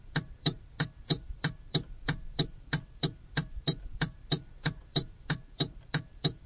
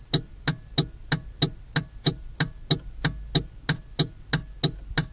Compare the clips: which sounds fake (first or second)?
first